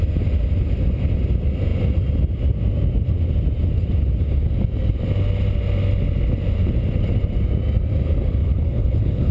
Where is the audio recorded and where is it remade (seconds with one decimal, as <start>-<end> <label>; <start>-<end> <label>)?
0.0-8.4 recorded; 8.4-9.3 remade